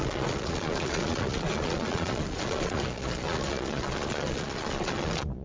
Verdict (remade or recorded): remade